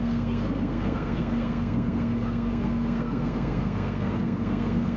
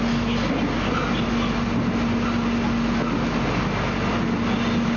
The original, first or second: second